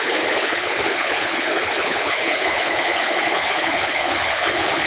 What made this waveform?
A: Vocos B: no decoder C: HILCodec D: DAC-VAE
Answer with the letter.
C